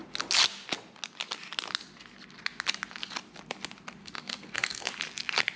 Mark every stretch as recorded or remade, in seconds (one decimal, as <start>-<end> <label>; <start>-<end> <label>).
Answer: 0.0-4.0 recorded; 4.0-4.9 remade; 4.9-5.6 recorded